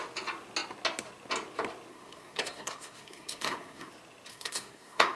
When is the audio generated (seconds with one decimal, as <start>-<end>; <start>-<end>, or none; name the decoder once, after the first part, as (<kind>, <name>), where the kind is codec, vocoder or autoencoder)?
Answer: 1.9-3.9 (codec, SNAC); 4.3-5.2